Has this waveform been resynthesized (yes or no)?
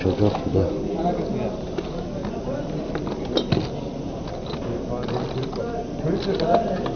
no